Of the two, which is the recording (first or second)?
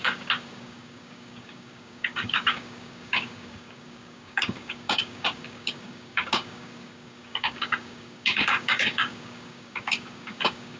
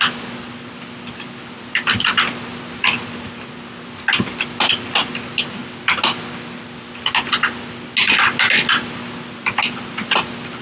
second